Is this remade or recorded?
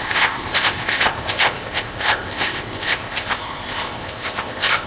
remade